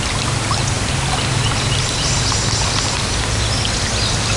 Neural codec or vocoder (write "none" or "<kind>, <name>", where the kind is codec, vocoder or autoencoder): none